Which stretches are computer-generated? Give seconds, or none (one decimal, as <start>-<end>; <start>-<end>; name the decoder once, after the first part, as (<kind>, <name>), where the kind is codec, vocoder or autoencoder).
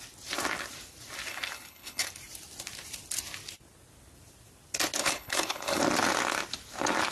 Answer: 1.3-2.1 (codec, HILCodec); 5.0-5.8